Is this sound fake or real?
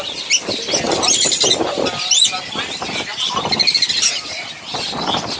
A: real